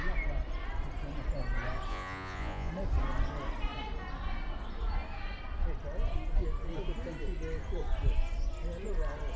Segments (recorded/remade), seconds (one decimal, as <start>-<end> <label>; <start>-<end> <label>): 0.0-1.9 recorded; 1.9-2.7 remade; 2.7-9.4 recorded